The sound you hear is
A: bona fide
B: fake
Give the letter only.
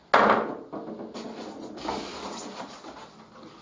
A